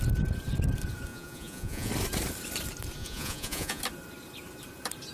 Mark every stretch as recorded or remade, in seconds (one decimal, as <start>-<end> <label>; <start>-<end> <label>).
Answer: 0.0-1.1 recorded; 1.1-1.9 remade; 1.9-3.0 recorded; 3.0-3.8 remade; 3.8-5.1 recorded

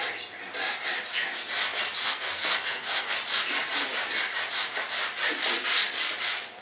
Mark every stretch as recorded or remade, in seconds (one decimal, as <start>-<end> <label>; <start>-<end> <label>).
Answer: 0.0-2.0 recorded; 2.0-3.1 remade; 3.1-6.6 recorded

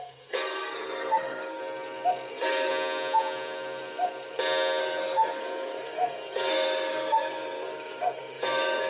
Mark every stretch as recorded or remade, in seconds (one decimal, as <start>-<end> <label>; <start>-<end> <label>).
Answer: 0.0-1.6 remade; 1.6-2.3 recorded; 2.3-2.7 remade; 2.7-4.8 recorded; 4.8-8.9 remade

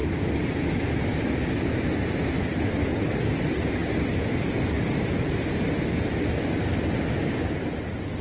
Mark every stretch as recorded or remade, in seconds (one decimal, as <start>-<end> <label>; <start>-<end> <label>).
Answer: 0.0-8.2 recorded

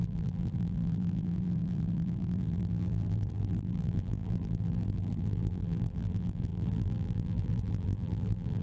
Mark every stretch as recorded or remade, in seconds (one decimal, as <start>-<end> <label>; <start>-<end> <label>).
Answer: 0.0-8.6 remade

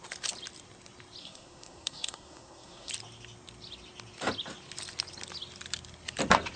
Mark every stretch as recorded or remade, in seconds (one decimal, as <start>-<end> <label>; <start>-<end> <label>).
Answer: 0.0-1.2 recorded; 1.2-2.9 remade; 2.9-6.6 recorded